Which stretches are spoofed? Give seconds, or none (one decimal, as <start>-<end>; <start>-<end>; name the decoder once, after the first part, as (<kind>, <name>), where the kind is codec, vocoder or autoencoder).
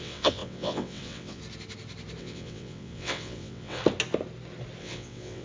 0.0-1.4 (vocoder, WaveNeXt); 2.2-3.8; 4.8-5.4